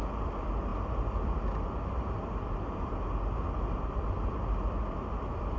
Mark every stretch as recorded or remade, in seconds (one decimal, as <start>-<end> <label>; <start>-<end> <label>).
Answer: 0.0-5.6 recorded